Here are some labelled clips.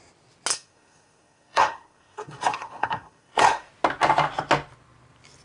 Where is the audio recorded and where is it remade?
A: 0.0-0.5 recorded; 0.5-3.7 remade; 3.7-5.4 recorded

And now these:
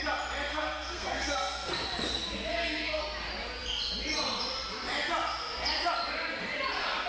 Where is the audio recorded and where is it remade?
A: 0.0-0.5 recorded; 0.5-1.7 remade; 1.7-2.5 recorded; 2.5-3.0 remade; 3.0-7.1 recorded

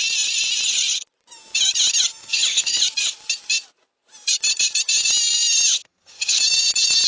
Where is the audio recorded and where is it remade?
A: 0.0-2.2 recorded; 2.2-2.8 remade; 2.8-5.7 recorded; 5.7-6.4 remade; 6.4-7.1 recorded

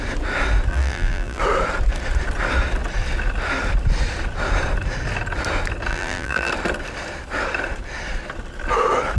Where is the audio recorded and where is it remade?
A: 0.0-0.7 recorded; 0.7-1.4 remade; 1.4-5.9 recorded; 5.9-6.5 remade; 6.5-9.2 recorded

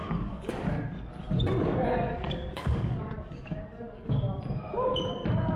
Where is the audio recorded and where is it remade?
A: 0.0-0.7 remade; 0.7-1.7 recorded; 1.7-4.2 remade; 4.2-5.6 recorded

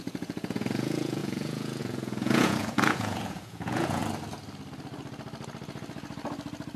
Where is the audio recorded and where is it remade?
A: 0.0-4.0 remade; 4.0-6.8 recorded

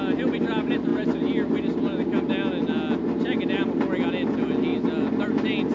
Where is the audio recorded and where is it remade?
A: 0.0-5.7 recorded